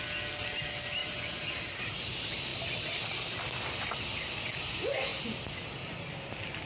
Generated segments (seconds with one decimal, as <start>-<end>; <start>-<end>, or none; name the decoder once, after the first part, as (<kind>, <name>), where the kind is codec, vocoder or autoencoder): 1.0-1.8 (vocoder, BigVGAN v2)